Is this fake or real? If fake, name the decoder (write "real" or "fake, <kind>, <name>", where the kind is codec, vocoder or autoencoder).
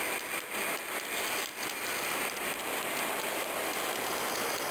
real